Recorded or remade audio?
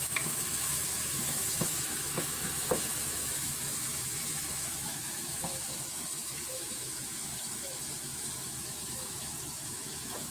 remade